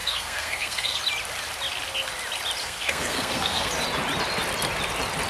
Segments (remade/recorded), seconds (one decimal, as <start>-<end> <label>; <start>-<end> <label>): 0.0-1.0 remade; 1.0-2.6 recorded; 2.6-3.7 remade; 3.7-5.3 recorded